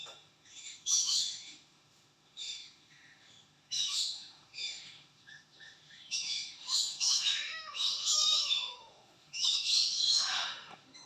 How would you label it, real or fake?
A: fake